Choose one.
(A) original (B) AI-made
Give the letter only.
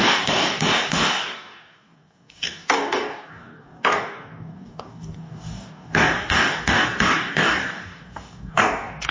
B